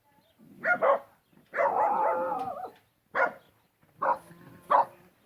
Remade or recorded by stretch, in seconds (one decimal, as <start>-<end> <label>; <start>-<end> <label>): 0.0-5.3 recorded